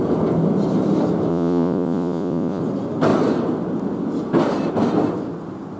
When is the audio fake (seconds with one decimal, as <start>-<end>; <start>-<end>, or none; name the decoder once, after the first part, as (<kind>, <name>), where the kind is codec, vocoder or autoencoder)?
1.3-2.6 (vocoder, Vocos)